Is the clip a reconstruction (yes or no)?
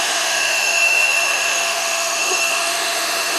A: yes